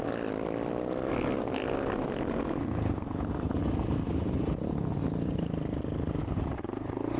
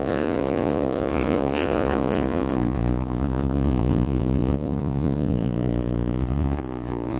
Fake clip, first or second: second